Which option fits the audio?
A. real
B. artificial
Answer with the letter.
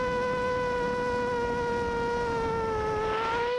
A